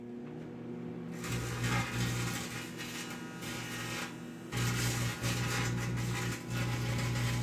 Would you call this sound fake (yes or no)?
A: no